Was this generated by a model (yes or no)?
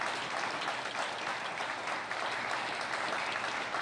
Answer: yes